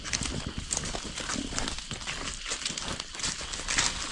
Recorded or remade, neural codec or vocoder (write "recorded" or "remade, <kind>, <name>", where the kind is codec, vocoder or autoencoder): recorded